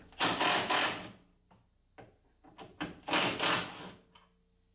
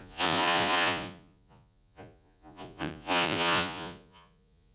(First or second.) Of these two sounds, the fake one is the second